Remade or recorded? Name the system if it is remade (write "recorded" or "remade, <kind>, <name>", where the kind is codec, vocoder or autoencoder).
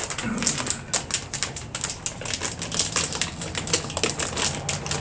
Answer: recorded